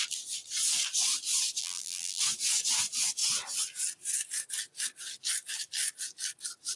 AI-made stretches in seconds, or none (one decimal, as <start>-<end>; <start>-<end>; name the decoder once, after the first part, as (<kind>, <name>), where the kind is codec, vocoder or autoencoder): 1.6-2.2 (vocoder, BigVGAN v2)